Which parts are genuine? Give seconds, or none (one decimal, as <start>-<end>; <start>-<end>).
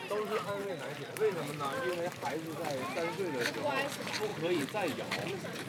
0.0-0.6; 2.3-4.3